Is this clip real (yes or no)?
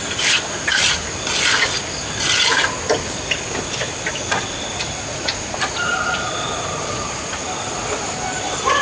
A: yes